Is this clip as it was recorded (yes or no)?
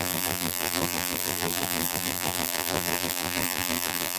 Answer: no